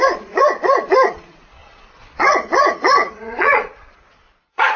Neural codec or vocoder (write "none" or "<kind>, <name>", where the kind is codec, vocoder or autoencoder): vocoder, Vocos